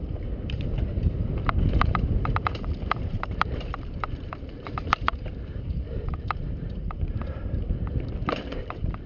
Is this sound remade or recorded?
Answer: remade